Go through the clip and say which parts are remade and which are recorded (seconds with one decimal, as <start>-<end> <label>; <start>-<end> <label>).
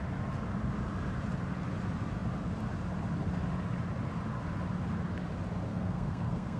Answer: 0.0-5.7 recorded; 5.7-6.6 remade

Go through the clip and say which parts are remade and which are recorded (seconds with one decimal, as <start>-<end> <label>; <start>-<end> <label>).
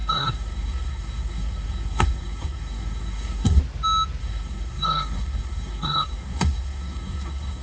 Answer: 0.0-3.6 remade; 3.6-4.2 recorded; 4.2-7.6 remade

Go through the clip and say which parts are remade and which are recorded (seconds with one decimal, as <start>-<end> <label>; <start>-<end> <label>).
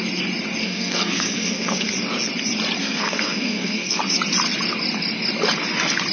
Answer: 0.0-0.6 recorded; 0.6-1.9 remade; 1.9-2.8 recorded; 2.8-4.0 remade; 4.0-6.1 recorded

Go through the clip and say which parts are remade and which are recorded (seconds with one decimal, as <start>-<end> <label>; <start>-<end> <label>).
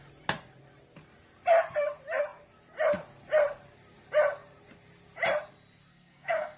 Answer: 0.0-5.9 recorded; 5.9-6.6 remade